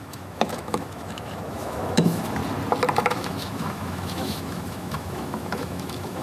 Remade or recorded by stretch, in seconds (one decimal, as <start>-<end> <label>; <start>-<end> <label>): 0.0-2.4 remade; 2.4-3.0 recorded; 3.0-6.2 remade